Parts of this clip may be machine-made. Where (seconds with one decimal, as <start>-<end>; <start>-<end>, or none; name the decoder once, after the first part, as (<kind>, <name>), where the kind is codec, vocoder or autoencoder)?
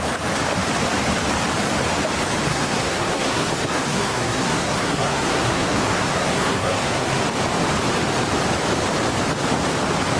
2.5-7.2 (codec, SNAC)